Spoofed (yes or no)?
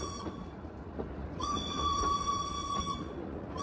yes